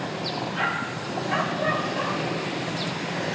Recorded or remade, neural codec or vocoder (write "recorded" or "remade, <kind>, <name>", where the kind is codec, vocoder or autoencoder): recorded